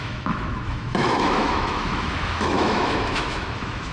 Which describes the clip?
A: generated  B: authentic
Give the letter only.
A